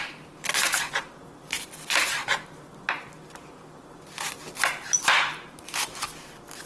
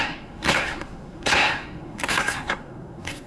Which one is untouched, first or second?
first